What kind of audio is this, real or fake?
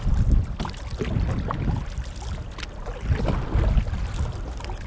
real